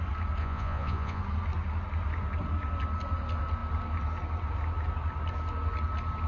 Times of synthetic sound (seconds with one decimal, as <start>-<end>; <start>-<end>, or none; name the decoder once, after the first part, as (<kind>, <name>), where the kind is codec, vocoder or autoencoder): 0.4-1.2 (vocoder, Vocos)